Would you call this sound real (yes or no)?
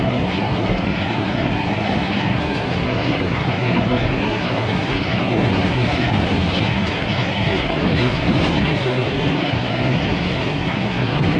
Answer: no